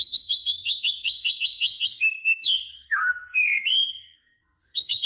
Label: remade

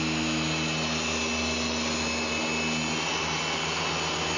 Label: recorded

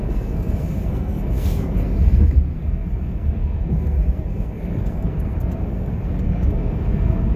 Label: remade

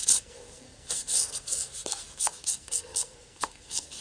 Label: remade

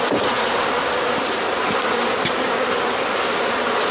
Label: recorded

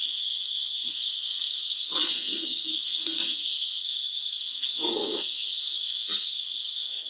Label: remade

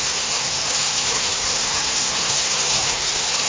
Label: remade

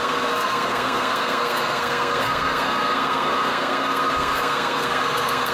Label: remade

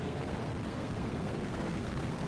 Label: remade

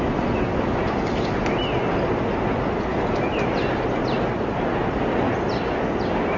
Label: recorded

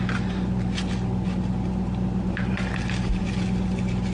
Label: recorded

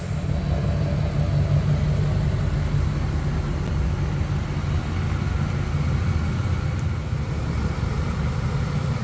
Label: recorded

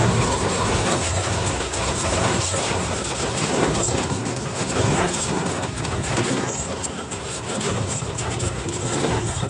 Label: remade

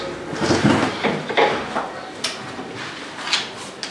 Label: recorded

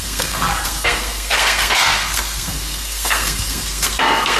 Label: remade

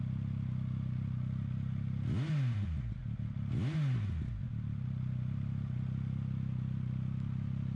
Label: recorded